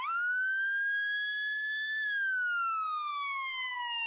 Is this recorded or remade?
recorded